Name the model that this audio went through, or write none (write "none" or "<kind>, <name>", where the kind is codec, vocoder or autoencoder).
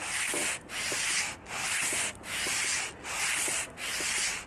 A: none